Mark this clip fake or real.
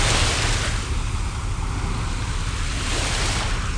real